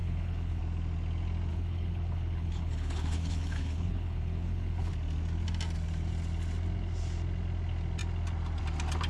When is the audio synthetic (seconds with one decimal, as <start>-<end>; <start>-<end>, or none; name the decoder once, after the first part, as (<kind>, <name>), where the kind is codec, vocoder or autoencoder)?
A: 0.0-0.6 (codec, HILCodec); 1.5-4.9